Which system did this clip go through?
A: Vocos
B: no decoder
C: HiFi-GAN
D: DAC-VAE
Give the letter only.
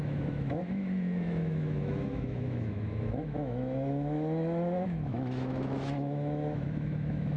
D